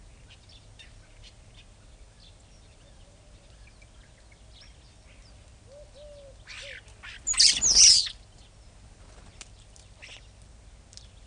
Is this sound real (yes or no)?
yes